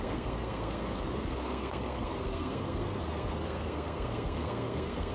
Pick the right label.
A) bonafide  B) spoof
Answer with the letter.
B